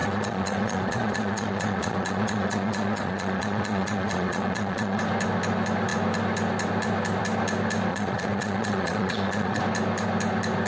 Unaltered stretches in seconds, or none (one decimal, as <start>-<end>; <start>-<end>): 5.0-7.9; 9.6-10.7